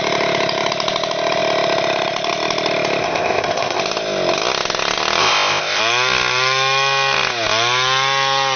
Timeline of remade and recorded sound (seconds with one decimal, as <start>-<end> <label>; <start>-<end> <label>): 0.0-3.0 recorded; 3.0-3.8 remade; 3.8-5.2 recorded; 5.2-5.8 remade; 5.8-8.6 recorded